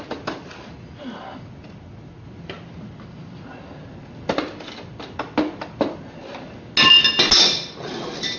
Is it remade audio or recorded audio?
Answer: recorded